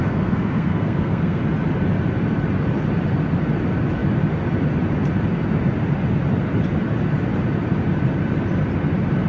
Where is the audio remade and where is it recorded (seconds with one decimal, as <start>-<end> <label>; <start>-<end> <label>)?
0.0-1.4 remade; 1.4-9.3 recorded